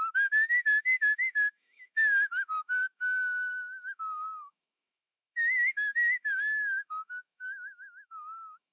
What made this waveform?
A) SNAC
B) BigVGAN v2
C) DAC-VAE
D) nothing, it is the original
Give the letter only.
C